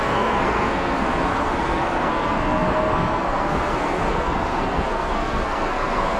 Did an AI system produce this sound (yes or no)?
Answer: yes